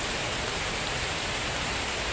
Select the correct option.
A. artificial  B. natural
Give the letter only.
B